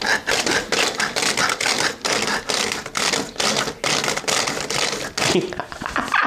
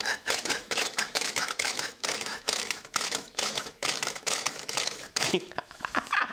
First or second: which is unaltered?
first